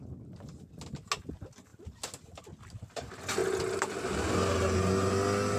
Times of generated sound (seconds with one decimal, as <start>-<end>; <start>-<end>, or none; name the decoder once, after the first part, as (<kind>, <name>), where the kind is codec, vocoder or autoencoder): none